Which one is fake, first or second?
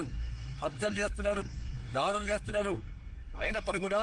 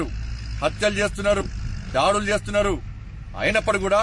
first